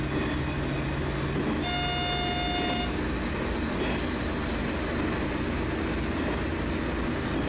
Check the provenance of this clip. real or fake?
real